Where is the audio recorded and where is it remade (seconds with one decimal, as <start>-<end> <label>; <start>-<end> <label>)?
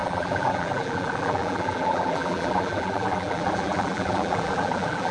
0.0-5.1 remade